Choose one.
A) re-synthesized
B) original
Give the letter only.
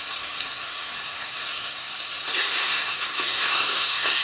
A